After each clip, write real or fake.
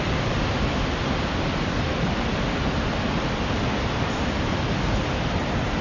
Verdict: real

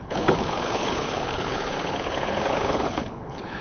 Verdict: fake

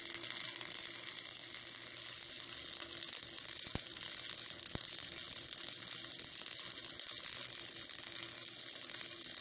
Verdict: real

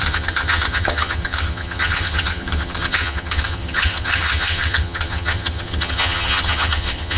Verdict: fake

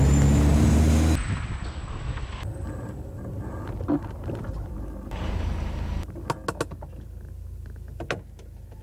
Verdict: real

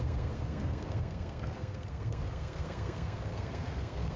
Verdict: fake